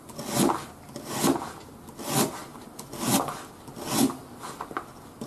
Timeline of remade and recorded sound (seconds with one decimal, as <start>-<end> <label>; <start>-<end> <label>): 0.0-5.3 recorded